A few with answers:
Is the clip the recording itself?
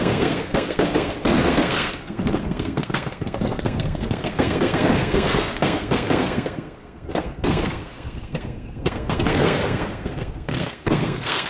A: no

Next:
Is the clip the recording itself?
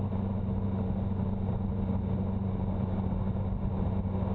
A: yes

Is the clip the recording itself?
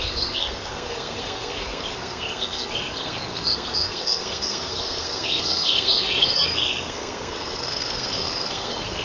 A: no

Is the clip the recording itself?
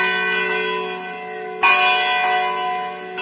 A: yes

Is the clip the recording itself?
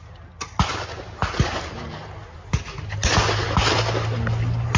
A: yes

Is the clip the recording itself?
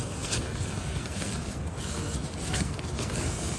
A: no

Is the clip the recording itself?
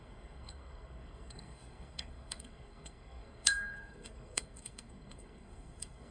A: no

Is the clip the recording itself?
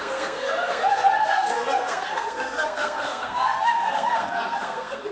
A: no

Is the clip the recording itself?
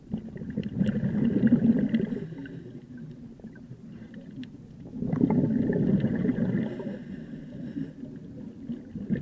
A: yes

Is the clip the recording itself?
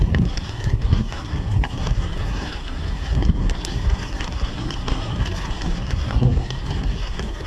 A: no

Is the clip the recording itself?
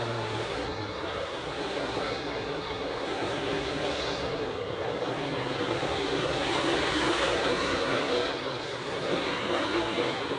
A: no